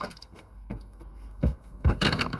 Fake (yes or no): yes